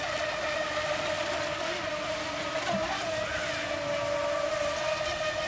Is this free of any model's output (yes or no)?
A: yes